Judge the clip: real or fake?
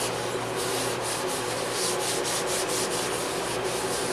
real